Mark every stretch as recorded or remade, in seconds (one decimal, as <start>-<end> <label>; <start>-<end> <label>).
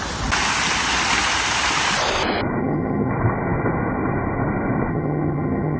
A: 0.0-2.6 recorded; 2.6-3.1 remade; 3.1-4.9 recorded; 4.9-5.8 remade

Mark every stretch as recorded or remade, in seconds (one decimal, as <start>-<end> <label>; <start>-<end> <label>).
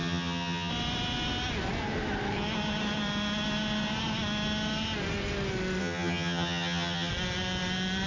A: 0.0-0.7 remade; 0.7-5.8 recorded; 5.8-7.1 remade; 7.1-8.1 recorded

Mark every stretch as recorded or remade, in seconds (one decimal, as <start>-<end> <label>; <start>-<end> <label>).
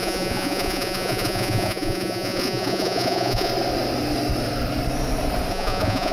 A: 0.0-3.5 remade; 3.5-5.5 recorded; 5.5-6.1 remade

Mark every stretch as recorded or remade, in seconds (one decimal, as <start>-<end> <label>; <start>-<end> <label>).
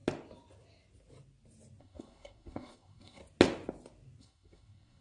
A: 0.0-1.8 recorded; 1.8-3.2 remade; 3.2-4.2 recorded; 4.2-5.0 remade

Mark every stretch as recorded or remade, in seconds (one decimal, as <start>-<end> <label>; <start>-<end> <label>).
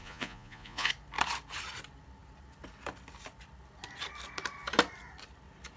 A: 0.0-0.9 remade; 0.9-5.8 recorded